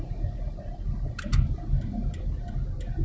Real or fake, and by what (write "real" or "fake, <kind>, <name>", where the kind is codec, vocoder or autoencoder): real